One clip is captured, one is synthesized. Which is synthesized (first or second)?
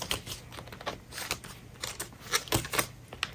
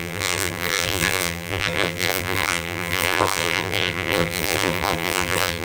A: second